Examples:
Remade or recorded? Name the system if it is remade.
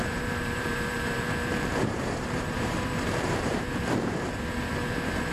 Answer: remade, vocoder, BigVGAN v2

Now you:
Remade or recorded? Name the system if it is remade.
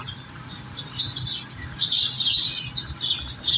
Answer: recorded